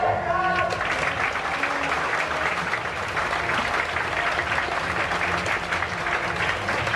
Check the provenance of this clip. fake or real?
real